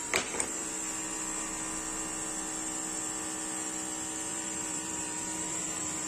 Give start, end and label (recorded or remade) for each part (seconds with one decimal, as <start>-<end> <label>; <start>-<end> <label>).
0.0-0.6 remade; 0.6-4.3 recorded; 4.3-6.1 remade